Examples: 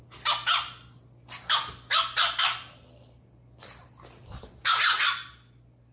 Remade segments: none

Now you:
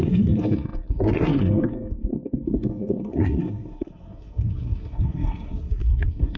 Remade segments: 0.0-6.4 (codec, SNAC)

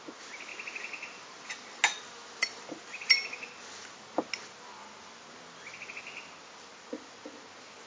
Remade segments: none

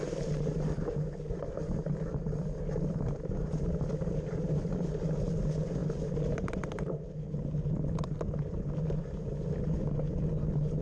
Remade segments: none